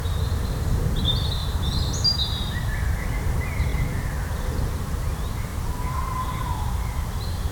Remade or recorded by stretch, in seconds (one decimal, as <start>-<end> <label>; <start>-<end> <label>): 0.0-1.4 remade; 1.4-2.7 recorded; 2.7-3.7 remade; 3.7-4.8 recorded; 4.8-5.5 remade; 5.5-6.4 recorded; 6.4-7.5 remade